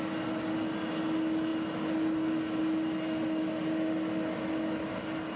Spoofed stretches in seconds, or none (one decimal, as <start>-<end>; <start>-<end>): none